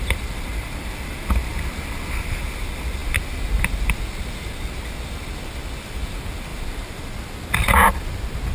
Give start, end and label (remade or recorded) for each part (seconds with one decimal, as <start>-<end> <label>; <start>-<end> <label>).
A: 0.0-1.5 remade; 1.5-2.2 recorded; 2.2-3.0 remade; 3.0-5.8 recorded; 5.8-7.7 remade; 7.7-8.5 recorded